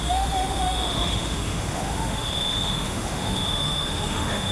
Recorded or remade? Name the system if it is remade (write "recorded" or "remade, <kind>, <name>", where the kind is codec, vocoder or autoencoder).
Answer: remade, autoencoder, DAC-VAE